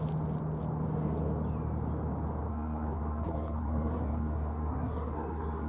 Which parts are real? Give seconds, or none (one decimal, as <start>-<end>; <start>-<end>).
0.0-2.5